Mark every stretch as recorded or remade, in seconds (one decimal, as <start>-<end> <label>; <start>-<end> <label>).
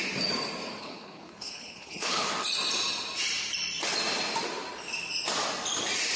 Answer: 0.0-0.8 recorded; 0.8-2.3 remade; 2.3-6.2 recorded